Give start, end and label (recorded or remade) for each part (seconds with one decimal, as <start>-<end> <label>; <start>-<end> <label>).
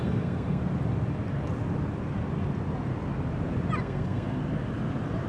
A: 0.0-0.6 remade; 0.6-3.8 recorded; 3.8-4.4 remade; 4.4-5.3 recorded